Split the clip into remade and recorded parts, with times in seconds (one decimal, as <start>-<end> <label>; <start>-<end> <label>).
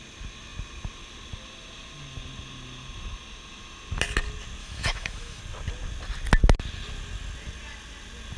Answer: 0.0-4.6 recorded; 4.6-5.4 remade; 5.4-8.4 recorded